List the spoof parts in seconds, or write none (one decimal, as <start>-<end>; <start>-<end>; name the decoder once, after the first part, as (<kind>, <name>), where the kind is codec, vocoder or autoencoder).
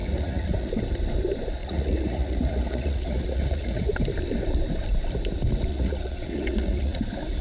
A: 0.0-0.7 (vocoder, Vocos); 1.6-3.9; 5.7-7.0